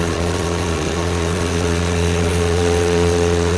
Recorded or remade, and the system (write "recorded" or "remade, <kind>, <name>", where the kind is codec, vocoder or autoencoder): remade, vocoder, Vocos